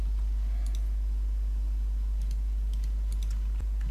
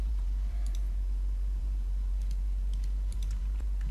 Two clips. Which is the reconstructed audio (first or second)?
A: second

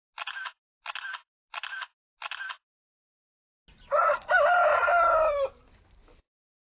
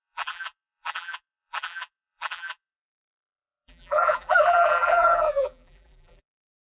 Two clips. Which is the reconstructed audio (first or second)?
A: second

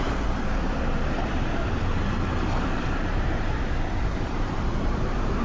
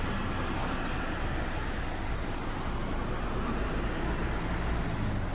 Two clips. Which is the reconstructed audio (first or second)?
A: first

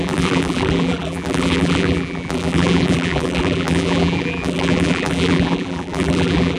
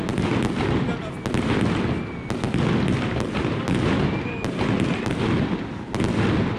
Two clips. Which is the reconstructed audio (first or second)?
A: first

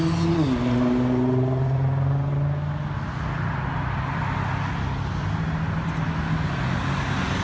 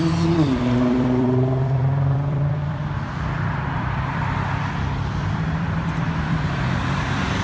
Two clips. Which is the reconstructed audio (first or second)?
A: second